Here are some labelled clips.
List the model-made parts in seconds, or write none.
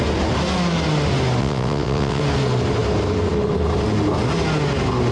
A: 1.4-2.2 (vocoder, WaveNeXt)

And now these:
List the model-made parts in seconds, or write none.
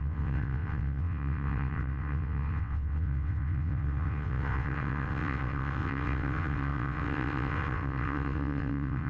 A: 0.0-9.1 (vocoder, WaveNeXt)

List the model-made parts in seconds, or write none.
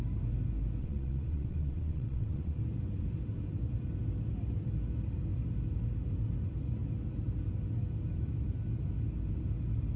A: 0.8-2.6 (vocoder, WaveNeXt)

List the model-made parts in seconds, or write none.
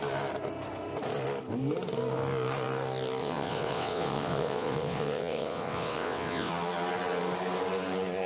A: 3.2-6.5 (vocoder, WaveNeXt)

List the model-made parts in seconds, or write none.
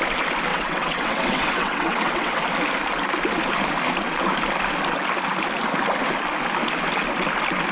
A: 0.5-2.4 (vocoder, WaveNeXt)